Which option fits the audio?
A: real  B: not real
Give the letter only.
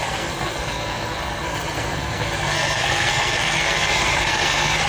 B